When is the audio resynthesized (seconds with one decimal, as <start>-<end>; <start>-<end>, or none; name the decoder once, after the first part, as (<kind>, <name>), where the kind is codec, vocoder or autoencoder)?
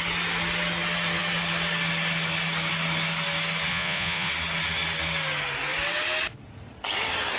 3.7-4.3 (vocoder, Vocos)